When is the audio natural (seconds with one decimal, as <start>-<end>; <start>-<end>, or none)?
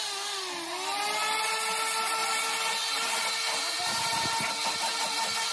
0.0-5.5